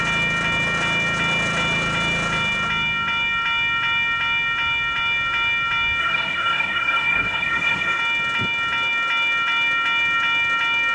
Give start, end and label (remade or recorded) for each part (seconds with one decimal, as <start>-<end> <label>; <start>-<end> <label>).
0.0-6.0 recorded; 6.0-8.0 remade; 8.0-10.9 recorded